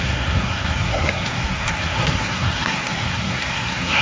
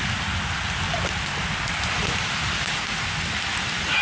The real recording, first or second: second